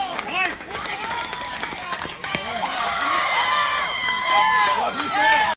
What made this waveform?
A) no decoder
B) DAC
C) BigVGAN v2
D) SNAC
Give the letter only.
B